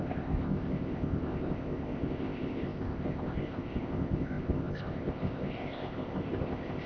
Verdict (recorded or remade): remade